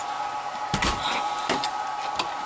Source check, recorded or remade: recorded